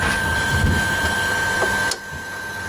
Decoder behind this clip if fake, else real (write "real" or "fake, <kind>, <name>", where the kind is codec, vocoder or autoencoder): real